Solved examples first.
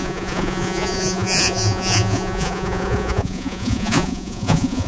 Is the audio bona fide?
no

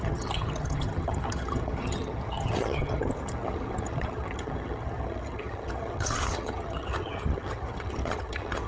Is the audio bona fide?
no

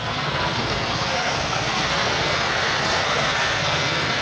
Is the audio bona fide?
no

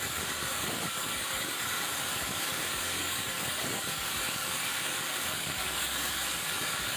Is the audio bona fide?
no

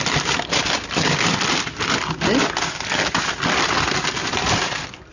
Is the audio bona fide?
yes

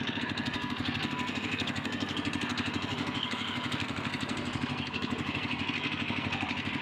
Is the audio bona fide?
no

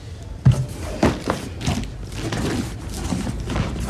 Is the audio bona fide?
yes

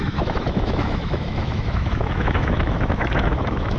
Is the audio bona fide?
no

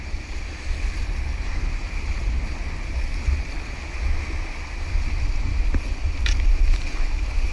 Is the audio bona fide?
yes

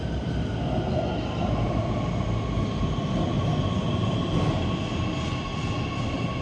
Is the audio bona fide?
yes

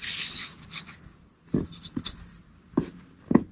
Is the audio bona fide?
yes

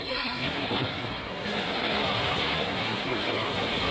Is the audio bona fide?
no